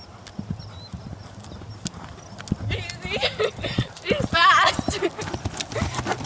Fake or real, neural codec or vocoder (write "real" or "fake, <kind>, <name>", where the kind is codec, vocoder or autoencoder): real